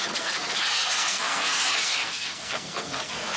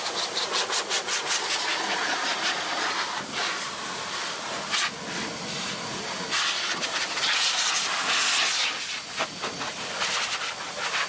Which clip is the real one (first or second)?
second